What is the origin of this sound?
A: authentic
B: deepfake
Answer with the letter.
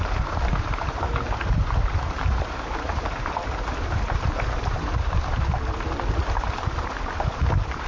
B